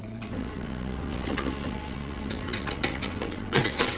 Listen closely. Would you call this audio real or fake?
fake